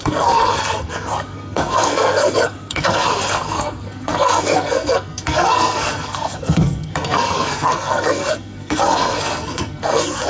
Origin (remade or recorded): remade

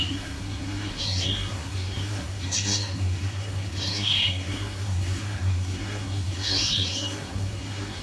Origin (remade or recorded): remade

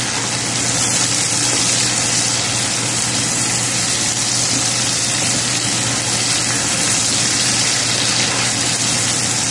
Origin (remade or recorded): recorded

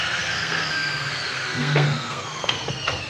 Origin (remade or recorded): remade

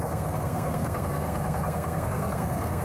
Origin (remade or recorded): remade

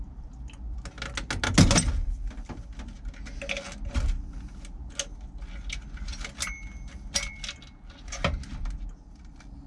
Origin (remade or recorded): recorded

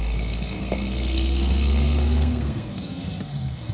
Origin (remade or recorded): remade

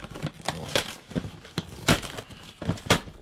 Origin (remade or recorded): recorded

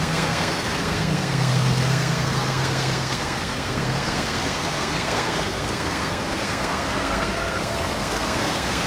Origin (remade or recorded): remade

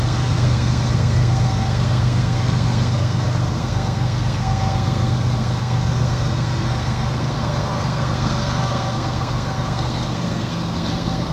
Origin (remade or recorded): remade